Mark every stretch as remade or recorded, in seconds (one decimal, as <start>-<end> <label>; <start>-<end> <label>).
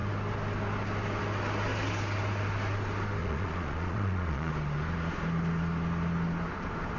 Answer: 0.0-3.2 recorded; 3.2-4.5 remade; 4.5-7.0 recorded